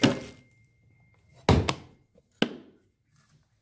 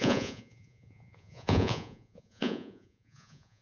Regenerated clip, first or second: second